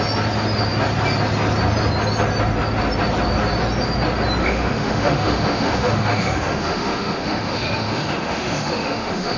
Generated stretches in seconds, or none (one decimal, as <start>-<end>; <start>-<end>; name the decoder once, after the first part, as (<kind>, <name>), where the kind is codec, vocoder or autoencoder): 4.4-9.4 (autoencoder, DAC-VAE)